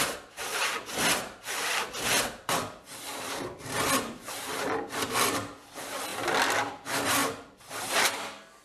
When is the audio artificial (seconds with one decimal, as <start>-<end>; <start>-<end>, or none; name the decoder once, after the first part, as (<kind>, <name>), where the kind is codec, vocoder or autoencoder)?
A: none